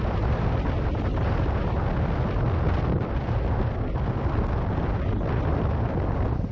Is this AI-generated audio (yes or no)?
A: no